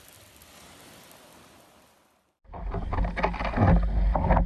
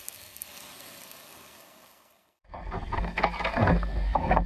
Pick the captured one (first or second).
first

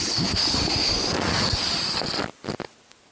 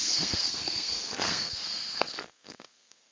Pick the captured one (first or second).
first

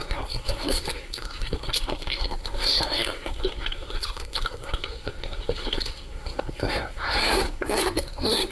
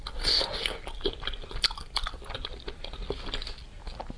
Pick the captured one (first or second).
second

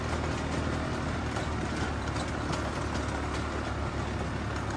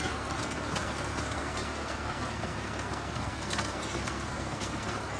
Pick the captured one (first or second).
first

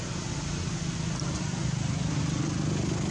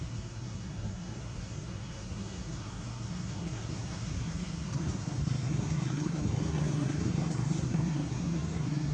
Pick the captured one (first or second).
first